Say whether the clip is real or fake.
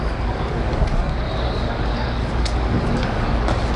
fake